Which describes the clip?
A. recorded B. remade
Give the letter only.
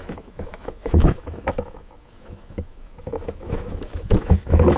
B